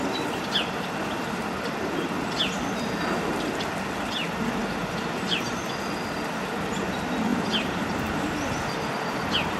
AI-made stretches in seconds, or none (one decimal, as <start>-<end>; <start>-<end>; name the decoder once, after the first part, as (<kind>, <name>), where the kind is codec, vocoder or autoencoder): 4.6-5.5 (vocoder, BigVGAN v2); 7.3-8.3